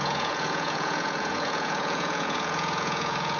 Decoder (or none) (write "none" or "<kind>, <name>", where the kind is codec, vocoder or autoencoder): vocoder, Vocos